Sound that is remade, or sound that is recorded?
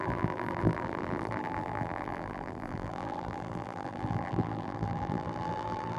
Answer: remade